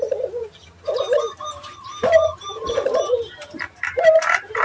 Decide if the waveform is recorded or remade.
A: remade